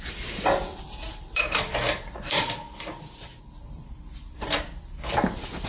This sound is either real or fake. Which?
fake